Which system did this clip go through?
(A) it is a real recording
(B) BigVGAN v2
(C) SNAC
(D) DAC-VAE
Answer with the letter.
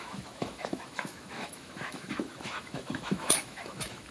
D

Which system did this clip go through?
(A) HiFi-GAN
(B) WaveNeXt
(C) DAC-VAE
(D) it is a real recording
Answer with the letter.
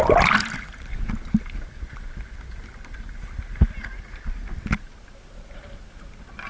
D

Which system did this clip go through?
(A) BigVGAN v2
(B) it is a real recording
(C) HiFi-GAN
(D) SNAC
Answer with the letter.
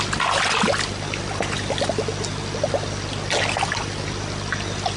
B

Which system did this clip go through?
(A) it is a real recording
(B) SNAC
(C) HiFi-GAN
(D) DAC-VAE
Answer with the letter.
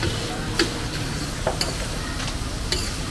A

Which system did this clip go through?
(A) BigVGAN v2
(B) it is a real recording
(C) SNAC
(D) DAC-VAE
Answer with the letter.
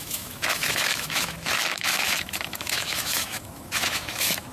D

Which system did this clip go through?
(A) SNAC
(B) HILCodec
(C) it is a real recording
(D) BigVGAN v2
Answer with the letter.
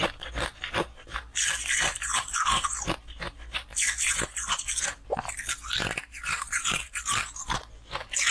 C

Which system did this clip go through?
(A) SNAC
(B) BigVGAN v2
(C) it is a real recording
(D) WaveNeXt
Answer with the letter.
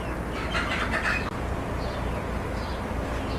C